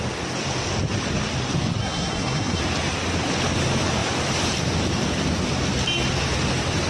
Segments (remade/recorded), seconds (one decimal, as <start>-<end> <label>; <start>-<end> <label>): 0.0-1.8 recorded; 1.8-2.6 remade; 2.6-6.9 recorded